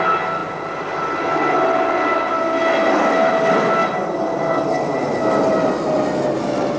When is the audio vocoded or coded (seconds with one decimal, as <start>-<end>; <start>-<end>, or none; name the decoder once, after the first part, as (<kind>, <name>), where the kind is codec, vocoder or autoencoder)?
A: none